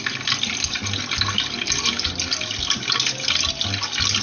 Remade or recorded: recorded